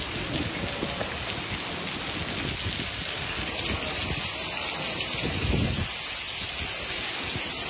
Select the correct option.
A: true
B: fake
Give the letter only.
A